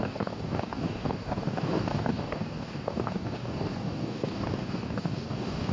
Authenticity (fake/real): fake